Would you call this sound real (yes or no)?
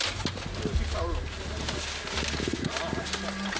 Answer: yes